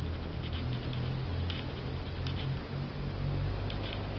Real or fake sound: real